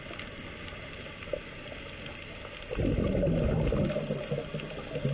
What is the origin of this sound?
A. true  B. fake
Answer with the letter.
A